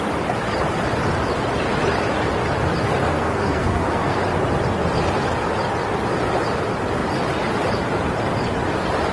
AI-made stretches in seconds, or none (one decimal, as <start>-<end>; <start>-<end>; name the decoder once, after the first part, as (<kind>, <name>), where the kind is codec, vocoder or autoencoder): 3.0-4.2 (codec, SNAC)